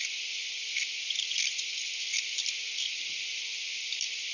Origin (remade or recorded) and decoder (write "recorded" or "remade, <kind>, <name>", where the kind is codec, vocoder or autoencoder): recorded